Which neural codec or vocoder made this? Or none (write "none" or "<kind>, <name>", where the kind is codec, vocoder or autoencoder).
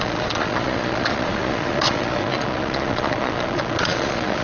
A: vocoder, Vocos